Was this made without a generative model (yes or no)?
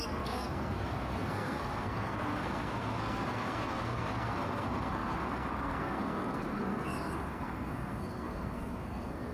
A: no